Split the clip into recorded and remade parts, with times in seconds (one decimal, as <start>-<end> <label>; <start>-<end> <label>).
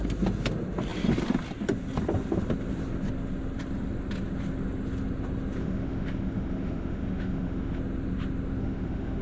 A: 0.0-5.6 recorded; 5.6-7.8 remade; 7.8-8.6 recorded; 8.6-9.2 remade